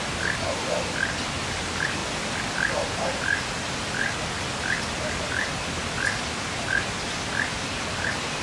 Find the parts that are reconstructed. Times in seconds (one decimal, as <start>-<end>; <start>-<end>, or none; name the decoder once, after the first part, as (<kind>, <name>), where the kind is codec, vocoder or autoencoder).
none